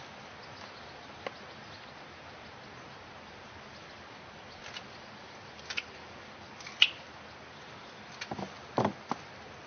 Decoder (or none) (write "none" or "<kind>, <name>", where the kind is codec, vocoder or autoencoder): none